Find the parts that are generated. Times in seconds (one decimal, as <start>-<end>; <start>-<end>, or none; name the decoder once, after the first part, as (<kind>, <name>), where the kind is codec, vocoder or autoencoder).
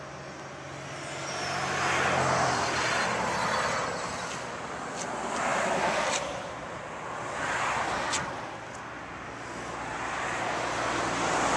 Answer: none